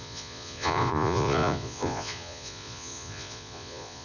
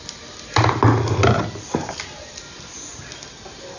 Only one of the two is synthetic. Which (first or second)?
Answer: first